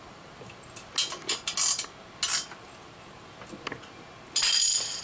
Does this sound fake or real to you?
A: real